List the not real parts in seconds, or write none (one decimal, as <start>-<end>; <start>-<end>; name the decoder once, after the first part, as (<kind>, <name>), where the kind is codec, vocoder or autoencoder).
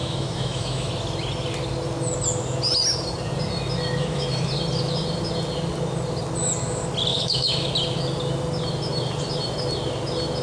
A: 0.0-0.9 (autoencoder, DAC-VAE); 4.0-4.5; 7.1-7.7